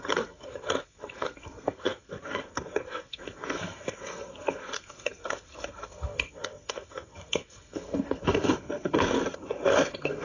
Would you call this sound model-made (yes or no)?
yes